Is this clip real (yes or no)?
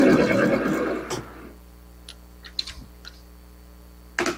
yes